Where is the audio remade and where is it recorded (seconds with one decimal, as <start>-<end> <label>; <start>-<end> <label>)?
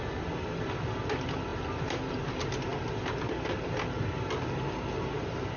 0.0-5.6 recorded